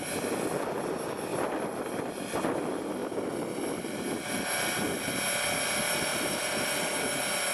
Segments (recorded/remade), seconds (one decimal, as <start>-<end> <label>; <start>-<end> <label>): 0.0-1.3 recorded; 1.3-1.8 remade; 1.8-6.1 recorded; 6.1-7.0 remade; 7.0-7.5 recorded